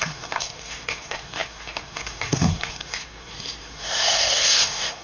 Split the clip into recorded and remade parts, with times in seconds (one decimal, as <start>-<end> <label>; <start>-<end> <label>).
0.0-5.0 remade